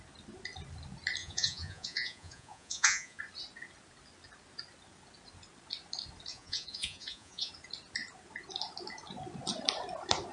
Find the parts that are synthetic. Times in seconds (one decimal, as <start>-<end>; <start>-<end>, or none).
1.2-3.2; 6.3-7.5